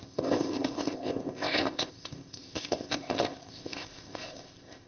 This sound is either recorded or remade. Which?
remade